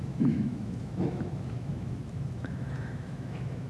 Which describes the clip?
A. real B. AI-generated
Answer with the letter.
B